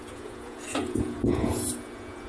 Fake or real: fake